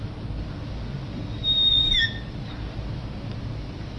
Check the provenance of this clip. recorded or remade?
recorded